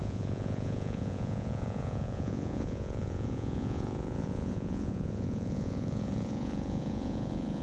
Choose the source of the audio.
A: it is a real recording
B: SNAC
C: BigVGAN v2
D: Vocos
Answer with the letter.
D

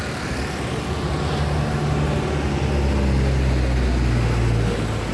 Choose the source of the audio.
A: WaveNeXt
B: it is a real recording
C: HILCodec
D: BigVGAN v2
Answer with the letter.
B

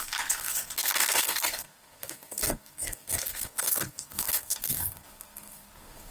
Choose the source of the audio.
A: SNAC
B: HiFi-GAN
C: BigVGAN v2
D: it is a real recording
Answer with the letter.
A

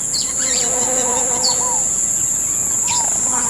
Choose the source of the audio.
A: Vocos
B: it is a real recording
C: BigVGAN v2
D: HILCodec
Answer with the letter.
A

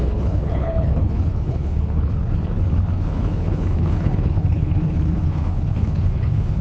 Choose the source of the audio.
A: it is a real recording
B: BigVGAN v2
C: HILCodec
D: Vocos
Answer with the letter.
C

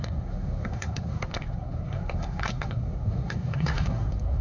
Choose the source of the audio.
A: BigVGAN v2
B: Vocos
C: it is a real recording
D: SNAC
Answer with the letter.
D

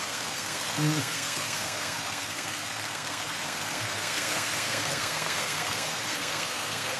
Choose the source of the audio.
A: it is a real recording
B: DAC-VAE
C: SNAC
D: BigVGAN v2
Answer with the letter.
C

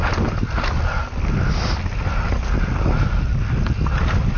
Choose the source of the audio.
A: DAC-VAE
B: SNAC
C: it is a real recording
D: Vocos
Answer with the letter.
C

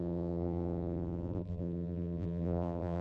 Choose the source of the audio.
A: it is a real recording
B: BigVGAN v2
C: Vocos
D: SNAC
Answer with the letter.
B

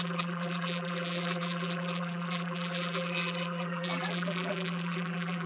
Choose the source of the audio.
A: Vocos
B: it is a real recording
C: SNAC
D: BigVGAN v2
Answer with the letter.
D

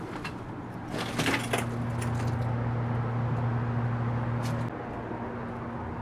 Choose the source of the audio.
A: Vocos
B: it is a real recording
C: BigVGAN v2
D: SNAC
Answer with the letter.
B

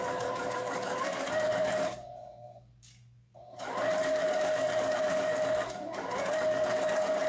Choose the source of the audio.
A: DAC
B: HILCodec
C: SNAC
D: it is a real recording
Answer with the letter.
A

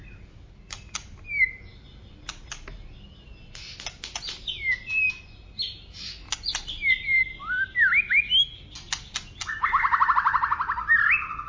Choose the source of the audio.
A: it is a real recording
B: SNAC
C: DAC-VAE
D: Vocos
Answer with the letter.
A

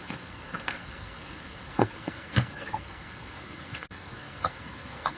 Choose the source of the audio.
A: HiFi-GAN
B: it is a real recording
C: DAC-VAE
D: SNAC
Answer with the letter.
D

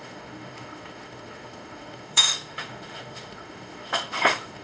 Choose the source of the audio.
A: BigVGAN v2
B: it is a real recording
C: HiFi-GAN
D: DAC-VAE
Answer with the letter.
D